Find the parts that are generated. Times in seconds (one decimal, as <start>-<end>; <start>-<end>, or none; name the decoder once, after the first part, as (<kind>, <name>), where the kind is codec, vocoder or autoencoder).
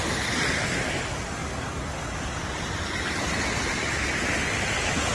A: none